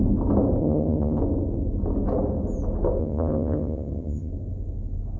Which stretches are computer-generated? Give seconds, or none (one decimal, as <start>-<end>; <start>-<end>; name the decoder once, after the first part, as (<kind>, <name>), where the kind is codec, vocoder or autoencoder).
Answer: 0.6-1.2 (vocoder, HiFi-GAN); 3.0-4.3